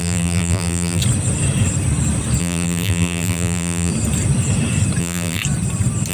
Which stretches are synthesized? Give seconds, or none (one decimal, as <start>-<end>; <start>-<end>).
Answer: 0.0-1.0; 2.4-3.9; 5.0-5.4